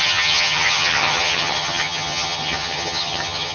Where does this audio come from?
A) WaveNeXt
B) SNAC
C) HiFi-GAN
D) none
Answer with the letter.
C